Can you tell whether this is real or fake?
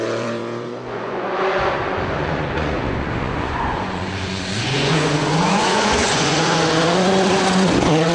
fake